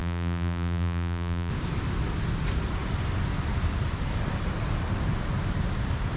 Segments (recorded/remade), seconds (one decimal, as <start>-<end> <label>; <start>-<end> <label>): 0.0-1.5 remade; 1.5-6.2 recorded